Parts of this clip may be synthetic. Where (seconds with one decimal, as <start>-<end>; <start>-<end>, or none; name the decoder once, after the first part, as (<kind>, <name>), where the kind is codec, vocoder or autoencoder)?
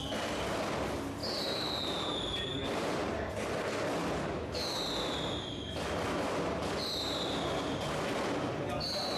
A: 1.2-3.3 (vocoder, BigVGAN v2)